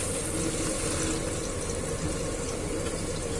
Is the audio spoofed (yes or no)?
no